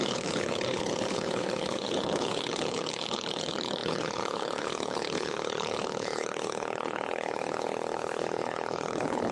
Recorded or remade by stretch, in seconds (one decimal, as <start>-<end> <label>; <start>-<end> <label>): 0.0-9.3 remade